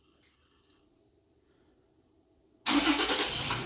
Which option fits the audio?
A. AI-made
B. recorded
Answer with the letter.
B